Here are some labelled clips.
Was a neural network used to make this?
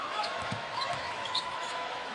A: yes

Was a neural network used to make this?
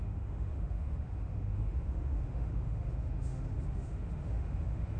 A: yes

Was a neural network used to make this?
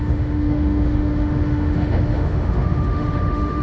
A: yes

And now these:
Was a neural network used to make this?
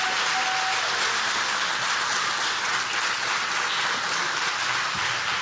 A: no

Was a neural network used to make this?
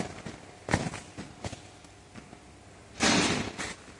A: no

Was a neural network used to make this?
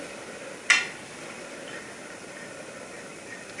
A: no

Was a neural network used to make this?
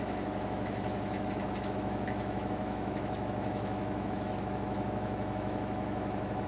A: yes